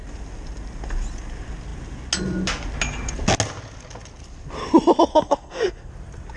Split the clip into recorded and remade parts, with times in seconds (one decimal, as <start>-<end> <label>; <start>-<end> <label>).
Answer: 0.0-5.1 recorded; 5.1-5.9 remade; 5.9-6.4 recorded